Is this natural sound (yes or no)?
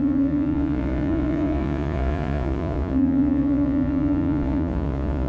no